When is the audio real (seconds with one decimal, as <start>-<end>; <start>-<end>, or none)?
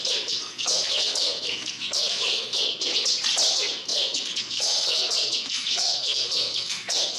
2.9-3.5